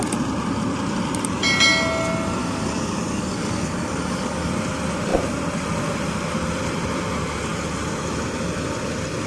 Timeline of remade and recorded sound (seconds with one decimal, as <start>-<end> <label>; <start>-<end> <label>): 0.0-2.4 recorded; 2.4-4.5 remade; 4.5-9.3 recorded